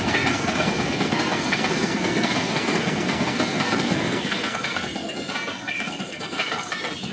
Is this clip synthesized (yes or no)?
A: yes